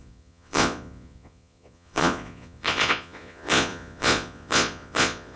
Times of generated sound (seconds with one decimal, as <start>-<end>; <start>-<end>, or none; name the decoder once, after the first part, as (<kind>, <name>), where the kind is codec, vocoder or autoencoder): 0.0-5.4 (vocoder, Vocos)